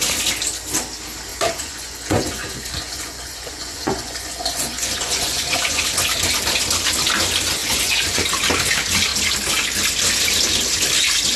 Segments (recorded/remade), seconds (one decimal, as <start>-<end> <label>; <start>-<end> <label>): 0.0-1.3 recorded; 1.3-5.8 remade; 5.8-7.6 recorded; 7.6-8.2 remade; 8.2-11.4 recorded